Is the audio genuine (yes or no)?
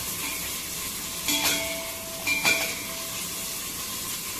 yes